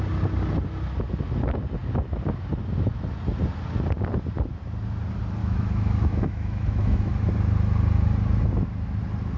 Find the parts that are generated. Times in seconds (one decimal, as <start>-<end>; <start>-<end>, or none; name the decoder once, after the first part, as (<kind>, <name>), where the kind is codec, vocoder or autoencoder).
5.4-7.3 (autoencoder, DAC-VAE)